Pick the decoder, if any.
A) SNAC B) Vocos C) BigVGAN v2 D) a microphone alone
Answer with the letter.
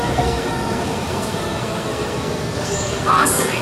A